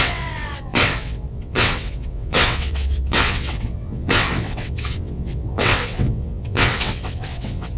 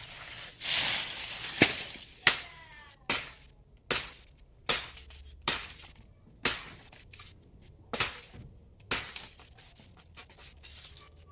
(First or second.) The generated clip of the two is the first